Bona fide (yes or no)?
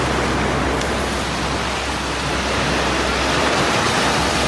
yes